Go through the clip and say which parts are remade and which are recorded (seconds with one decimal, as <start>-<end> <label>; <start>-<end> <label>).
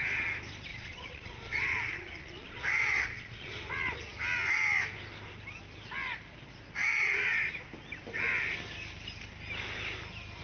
0.0-0.7 recorded; 0.7-3.5 remade; 3.5-6.8 recorded; 6.8-7.4 remade; 7.4-10.4 recorded